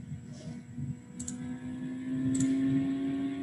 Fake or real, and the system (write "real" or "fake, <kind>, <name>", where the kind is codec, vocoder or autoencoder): real